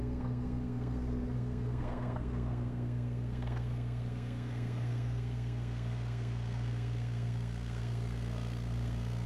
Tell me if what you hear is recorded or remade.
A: remade